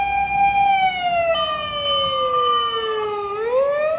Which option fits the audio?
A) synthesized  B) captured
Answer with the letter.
B